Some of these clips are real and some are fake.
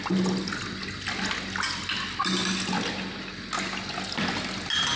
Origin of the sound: real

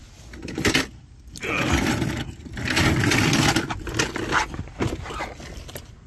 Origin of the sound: real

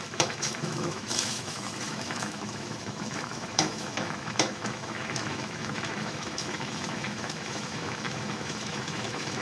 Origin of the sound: fake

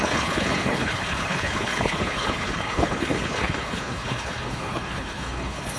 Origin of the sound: fake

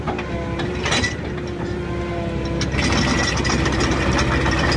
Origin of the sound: real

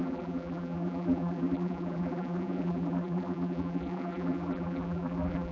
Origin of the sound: fake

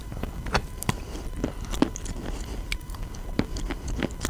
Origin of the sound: fake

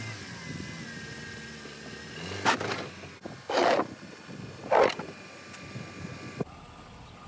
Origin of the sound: real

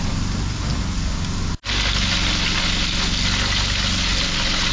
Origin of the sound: real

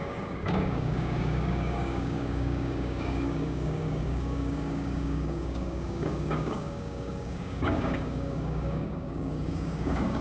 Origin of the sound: fake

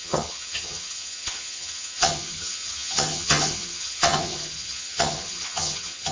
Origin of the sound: fake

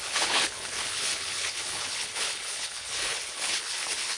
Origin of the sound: fake